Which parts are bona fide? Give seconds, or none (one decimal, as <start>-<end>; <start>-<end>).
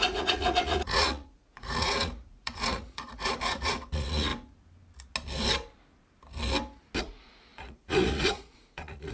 4.3-7.0